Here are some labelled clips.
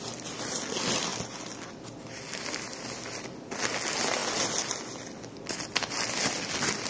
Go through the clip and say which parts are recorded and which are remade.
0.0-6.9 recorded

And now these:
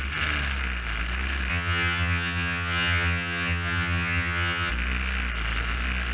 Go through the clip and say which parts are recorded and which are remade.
0.0-1.5 recorded; 1.5-4.7 remade; 4.7-6.1 recorded

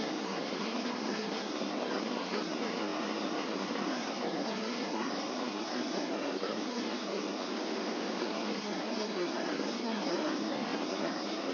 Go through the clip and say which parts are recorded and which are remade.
0.0-7.5 remade; 7.5-8.2 recorded; 8.2-11.5 remade

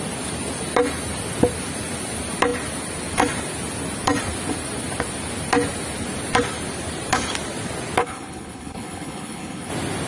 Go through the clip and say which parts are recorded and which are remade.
0.0-8.0 recorded; 8.0-9.7 remade; 9.7-10.1 recorded